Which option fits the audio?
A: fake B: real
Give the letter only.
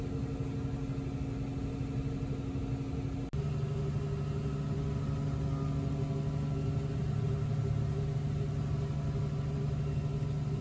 B